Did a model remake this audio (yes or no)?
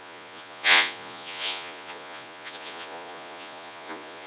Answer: yes